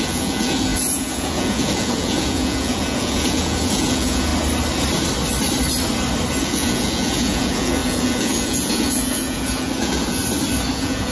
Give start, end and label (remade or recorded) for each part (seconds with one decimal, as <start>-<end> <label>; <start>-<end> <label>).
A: 0.0-4.3 remade; 4.3-6.4 recorded; 6.4-10.2 remade; 10.2-10.7 recorded; 10.7-11.1 remade